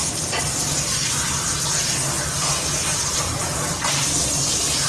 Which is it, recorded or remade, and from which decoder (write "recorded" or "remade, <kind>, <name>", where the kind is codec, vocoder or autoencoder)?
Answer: recorded